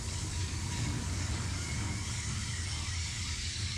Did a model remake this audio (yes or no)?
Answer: yes